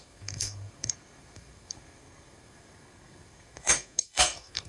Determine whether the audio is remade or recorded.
remade